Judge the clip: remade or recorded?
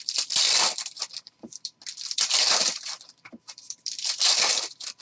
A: remade